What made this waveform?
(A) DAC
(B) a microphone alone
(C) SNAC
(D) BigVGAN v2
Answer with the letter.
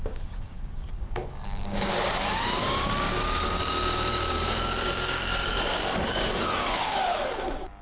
A